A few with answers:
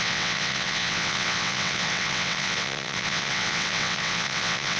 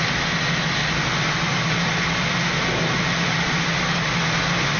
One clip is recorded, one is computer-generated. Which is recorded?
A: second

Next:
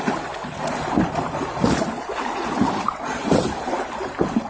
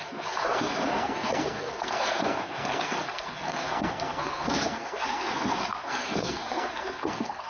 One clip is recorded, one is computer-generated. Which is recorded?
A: first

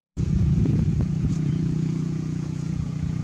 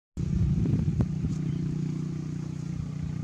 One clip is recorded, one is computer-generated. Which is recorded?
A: second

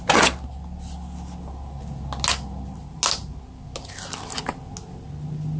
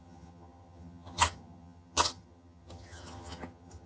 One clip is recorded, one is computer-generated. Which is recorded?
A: first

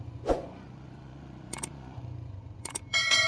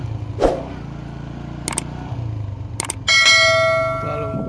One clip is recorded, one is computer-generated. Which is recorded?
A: second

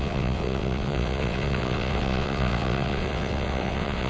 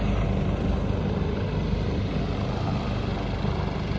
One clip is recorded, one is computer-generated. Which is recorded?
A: second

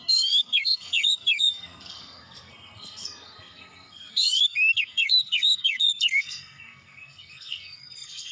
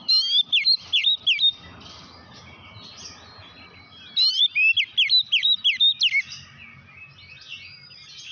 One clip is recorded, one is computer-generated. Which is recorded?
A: second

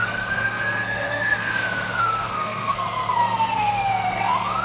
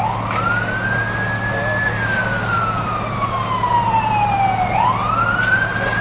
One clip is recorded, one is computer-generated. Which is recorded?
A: second